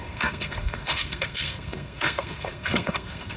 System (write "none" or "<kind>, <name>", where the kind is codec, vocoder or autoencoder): codec, SNAC